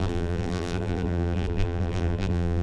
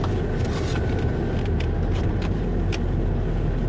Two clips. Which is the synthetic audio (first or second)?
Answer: first